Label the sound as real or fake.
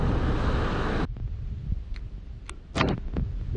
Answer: real